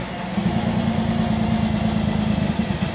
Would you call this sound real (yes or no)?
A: yes